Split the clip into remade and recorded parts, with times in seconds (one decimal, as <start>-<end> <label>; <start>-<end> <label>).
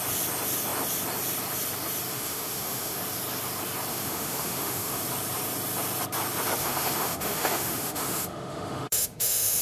0.0-2.1 recorded; 2.1-3.0 remade; 3.0-3.9 recorded; 3.9-5.0 remade; 5.0-6.6 recorded; 6.6-9.6 remade